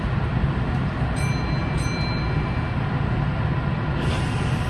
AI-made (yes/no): no